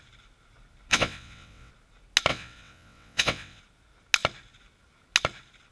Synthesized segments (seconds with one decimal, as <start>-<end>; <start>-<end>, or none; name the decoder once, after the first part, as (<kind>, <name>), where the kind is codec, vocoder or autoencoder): 0.9-1.7 (vocoder, WaveNeXt); 2.3-3.6